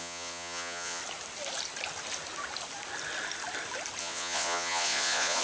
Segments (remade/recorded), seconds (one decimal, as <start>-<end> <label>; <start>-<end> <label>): 0.0-1.0 remade; 1.0-4.0 recorded; 4.0-5.4 remade